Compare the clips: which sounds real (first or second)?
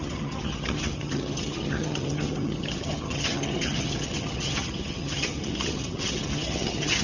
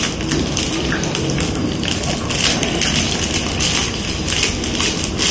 second